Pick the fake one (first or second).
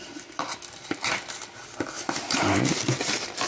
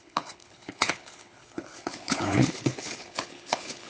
second